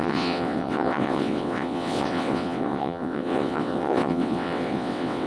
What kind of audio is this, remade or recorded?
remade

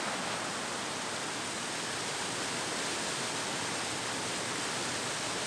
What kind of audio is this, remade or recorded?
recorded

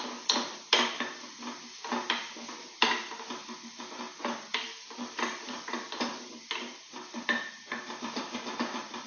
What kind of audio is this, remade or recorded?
recorded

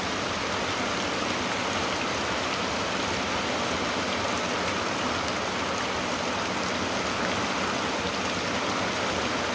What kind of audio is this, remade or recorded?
recorded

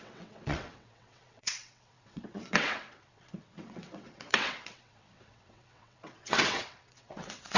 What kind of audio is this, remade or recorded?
remade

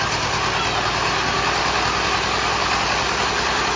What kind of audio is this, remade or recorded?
recorded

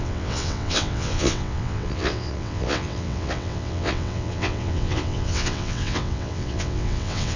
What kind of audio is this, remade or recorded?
remade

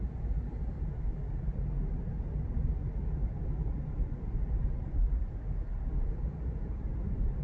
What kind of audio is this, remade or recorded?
recorded